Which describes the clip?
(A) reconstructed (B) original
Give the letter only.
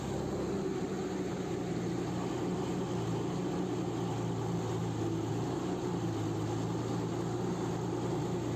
B